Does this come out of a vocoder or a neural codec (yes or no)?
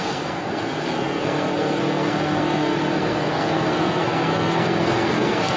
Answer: yes